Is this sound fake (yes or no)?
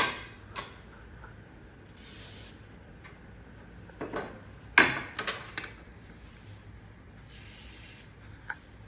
no